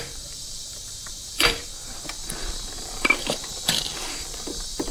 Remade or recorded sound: remade